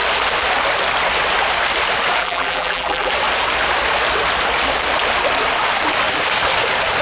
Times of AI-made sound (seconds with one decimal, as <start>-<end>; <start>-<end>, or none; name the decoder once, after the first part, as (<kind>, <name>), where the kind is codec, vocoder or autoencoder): 2.2-3.1 (vocoder, BigVGAN v2)